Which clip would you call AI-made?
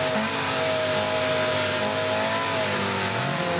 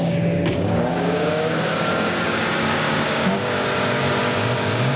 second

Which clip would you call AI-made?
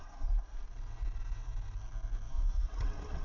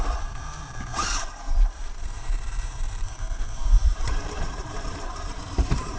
second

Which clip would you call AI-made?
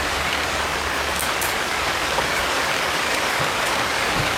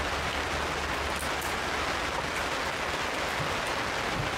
first